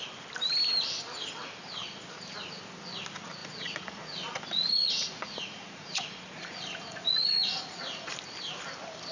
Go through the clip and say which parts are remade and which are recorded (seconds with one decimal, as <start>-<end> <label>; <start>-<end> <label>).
0.0-3.4 recorded; 3.4-8.1 remade; 8.1-9.1 recorded